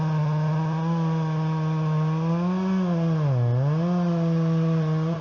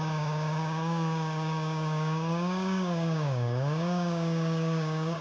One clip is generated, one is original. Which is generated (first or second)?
second